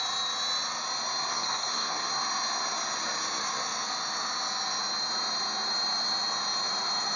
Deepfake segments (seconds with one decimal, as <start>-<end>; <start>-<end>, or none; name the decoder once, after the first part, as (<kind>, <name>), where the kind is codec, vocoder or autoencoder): 1.3-2.1 (codec, SNAC)